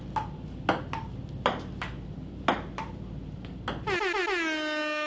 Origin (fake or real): real